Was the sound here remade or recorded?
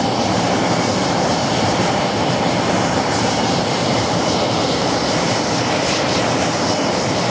remade